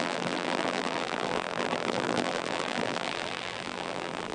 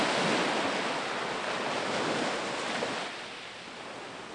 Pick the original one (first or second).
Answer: second